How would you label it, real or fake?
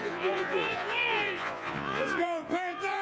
fake